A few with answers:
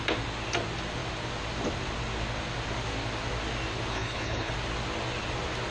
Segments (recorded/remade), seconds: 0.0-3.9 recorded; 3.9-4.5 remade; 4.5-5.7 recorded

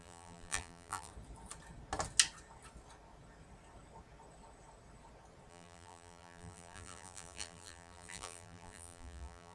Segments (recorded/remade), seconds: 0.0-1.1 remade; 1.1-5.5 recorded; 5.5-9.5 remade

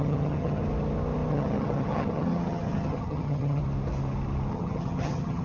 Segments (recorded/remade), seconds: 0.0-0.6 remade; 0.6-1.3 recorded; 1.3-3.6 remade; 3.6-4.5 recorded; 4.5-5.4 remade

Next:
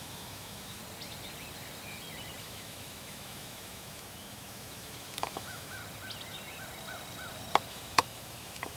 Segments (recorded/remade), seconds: 0.0-0.8 remade; 0.8-2.4 recorded; 2.4-5.8 remade; 5.8-7.7 recorded; 7.7-8.8 remade

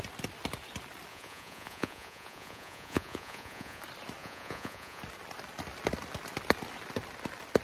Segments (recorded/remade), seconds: 0.0-1.1 recorded; 1.1-3.8 remade; 3.8-4.2 recorded; 4.2-5.0 remade; 5.0-7.6 recorded

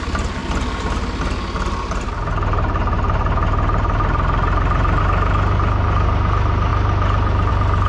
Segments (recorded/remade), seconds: 0.0-7.9 recorded

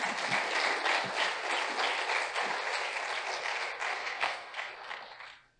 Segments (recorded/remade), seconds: 0.0-4.0 recorded; 4.0-4.7 remade; 4.7-5.6 recorded

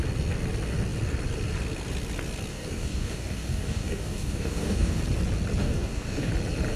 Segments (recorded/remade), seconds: 0.0-2.5 recorded; 2.5-5.0 remade; 5.0-5.6 recorded; 5.6-6.3 remade; 6.3-6.8 recorded